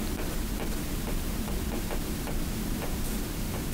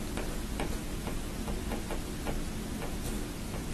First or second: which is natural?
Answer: second